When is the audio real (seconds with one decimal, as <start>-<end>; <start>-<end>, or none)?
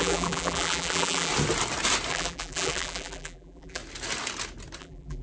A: 1.3-2.1; 3.8-4.8